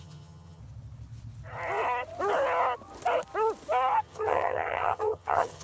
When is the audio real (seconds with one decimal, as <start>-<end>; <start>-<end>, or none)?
0.6-4.0